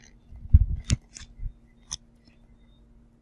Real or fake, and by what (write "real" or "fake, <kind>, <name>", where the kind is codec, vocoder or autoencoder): real